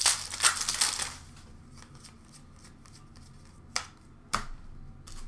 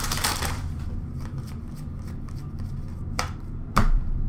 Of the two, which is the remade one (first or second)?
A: second